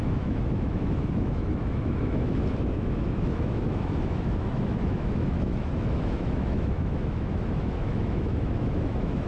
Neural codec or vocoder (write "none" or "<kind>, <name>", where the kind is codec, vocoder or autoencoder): autoencoder, DAC-VAE